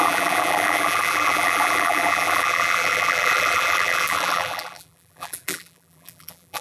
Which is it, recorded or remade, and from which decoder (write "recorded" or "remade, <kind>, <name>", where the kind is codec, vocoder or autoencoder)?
remade, vocoder, BigVGAN v2